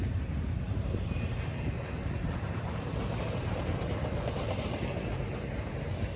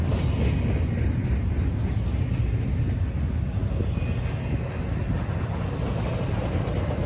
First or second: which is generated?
first